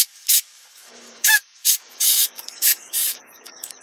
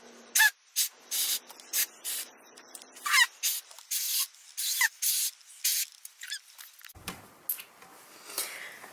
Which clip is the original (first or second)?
second